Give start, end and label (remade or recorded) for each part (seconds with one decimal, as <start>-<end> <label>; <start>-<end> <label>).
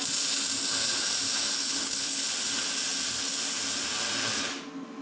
0.0-1.6 recorded; 1.6-2.2 remade; 2.2-5.0 recorded